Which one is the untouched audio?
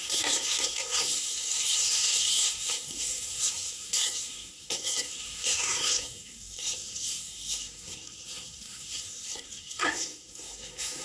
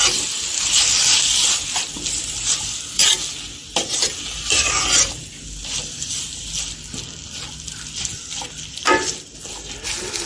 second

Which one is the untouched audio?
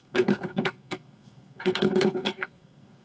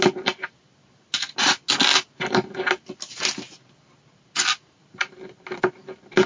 second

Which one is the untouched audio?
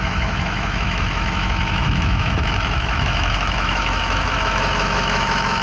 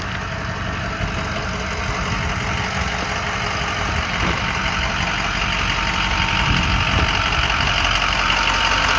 second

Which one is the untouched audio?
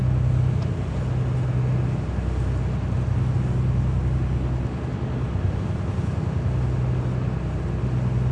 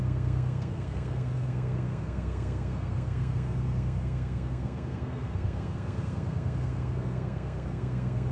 first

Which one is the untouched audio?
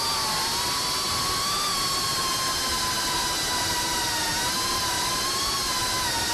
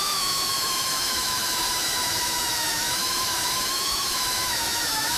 first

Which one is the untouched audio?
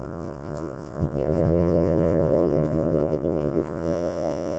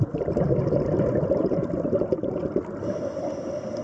second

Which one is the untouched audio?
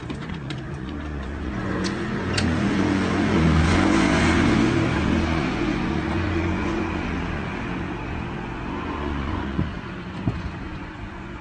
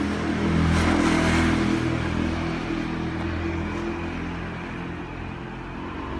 second